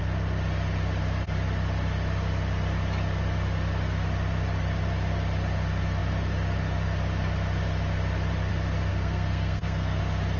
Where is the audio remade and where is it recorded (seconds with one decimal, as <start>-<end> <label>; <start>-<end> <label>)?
0.0-8.9 recorded; 8.9-10.0 remade; 10.0-10.4 recorded